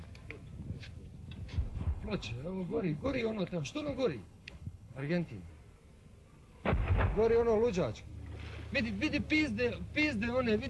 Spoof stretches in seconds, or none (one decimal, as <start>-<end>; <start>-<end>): 1.7-5.5